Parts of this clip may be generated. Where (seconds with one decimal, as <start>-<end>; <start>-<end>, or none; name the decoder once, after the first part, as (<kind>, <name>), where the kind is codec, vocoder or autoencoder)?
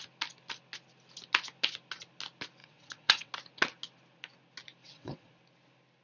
2.6-3.3 (vocoder, WaveNeXt); 4.8-5.3